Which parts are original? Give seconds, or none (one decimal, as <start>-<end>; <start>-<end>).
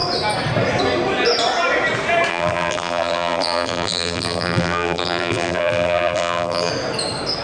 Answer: 0.0-2.3; 6.7-7.4